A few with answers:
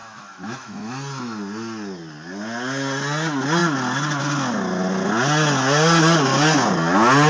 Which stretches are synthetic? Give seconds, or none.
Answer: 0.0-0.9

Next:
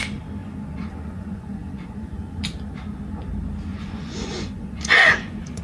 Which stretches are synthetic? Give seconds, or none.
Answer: 0.4-2.4; 3.7-5.6

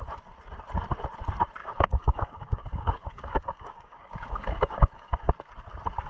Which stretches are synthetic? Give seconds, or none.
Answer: 1.6-5.3